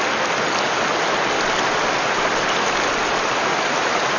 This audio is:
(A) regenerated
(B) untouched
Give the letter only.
B